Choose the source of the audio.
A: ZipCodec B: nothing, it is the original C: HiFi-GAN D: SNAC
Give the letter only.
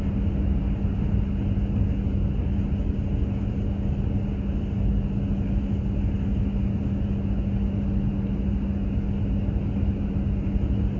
B